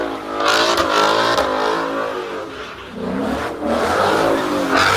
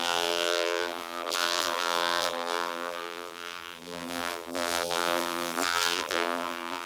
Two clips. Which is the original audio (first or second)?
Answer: first